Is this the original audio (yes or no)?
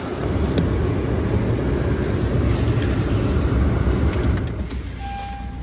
yes